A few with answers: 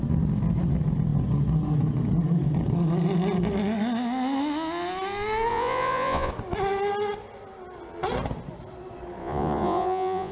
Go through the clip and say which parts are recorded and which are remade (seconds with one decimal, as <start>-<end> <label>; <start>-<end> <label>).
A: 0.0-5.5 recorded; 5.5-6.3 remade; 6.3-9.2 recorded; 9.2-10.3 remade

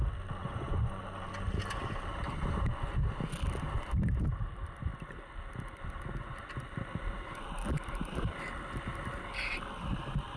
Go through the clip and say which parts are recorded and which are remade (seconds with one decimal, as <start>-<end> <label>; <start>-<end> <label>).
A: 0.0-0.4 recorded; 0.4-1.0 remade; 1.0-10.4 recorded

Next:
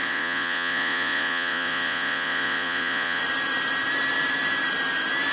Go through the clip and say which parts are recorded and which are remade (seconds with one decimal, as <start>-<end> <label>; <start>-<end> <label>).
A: 0.0-3.2 remade; 3.2-5.3 recorded